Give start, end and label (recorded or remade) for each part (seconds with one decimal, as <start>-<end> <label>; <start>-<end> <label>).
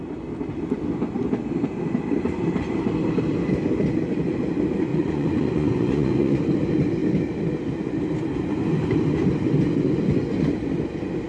0.0-4.9 recorded; 4.9-6.4 remade; 6.4-11.3 recorded